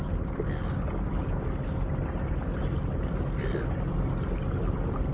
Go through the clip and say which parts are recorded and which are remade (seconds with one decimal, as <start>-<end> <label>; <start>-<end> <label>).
0.0-5.1 recorded